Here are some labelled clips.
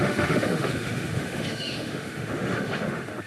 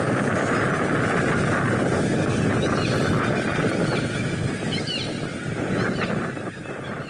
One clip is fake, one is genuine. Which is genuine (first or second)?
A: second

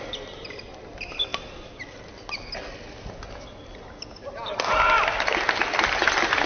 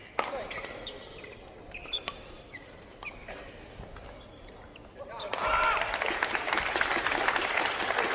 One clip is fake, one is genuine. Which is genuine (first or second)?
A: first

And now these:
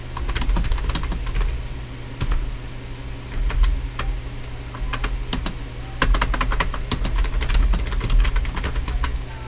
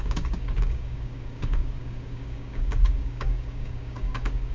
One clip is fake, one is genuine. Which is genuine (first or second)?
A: first